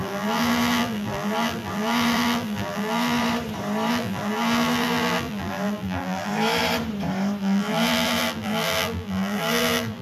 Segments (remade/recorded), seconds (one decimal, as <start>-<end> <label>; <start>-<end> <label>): 0.0-3.2 remade; 3.2-3.9 recorded; 3.9-6.3 remade; 6.3-7.4 recorded; 7.4-10.0 remade